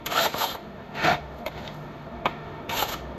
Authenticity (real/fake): fake